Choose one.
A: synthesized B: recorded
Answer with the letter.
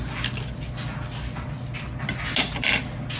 B